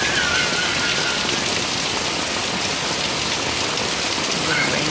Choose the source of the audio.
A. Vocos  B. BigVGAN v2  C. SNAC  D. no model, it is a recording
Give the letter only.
D